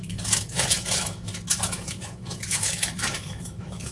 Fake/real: fake